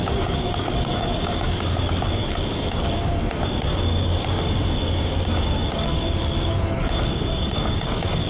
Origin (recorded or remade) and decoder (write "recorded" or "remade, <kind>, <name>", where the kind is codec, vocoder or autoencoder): remade, codec, DAC